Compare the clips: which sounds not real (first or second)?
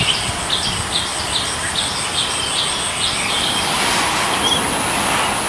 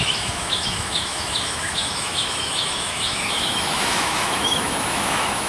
second